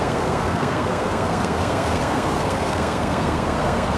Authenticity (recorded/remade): remade